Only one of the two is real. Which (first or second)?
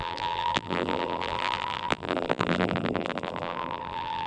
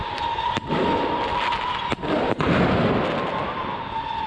second